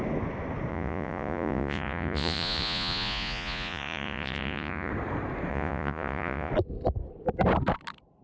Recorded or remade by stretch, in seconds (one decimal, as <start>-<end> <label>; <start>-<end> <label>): 0.0-0.7 recorded; 0.7-4.9 remade; 4.9-5.5 recorded; 5.5-6.5 remade; 6.5-8.2 recorded